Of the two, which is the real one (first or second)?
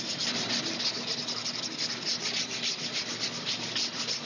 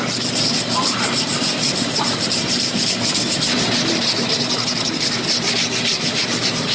first